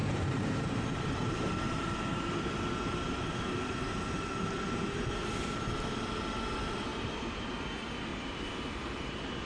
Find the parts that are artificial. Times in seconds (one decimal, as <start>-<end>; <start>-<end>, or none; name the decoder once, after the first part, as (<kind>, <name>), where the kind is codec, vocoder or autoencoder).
0.0-5.0 (vocoder, BigVGAN v2); 6.9-7.6; 8.1-9.5